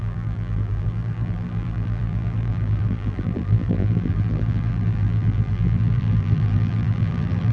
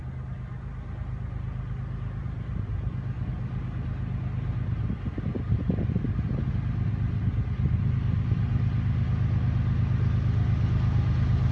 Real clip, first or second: second